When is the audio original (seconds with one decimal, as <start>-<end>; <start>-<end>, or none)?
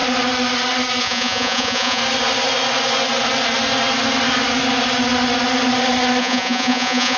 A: 0.0-1.0; 2.0-6.2